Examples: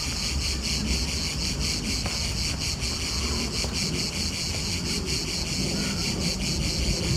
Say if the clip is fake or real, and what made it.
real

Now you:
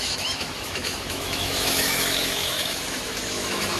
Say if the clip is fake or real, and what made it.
fake, autoencoder, DAC-VAE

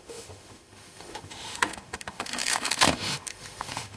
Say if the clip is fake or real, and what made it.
fake, autoencoder, DAC-VAE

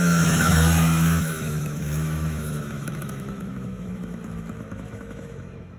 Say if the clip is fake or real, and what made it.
fake, autoencoder, DAC-VAE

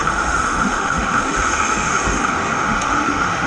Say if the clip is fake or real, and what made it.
fake, autoencoder, DAC-VAE